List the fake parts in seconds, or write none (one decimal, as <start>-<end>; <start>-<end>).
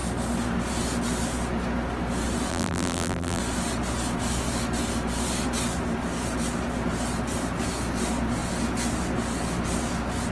2.5-3.4